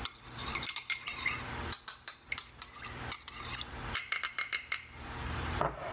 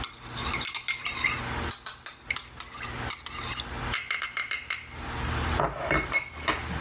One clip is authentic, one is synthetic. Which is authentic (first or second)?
second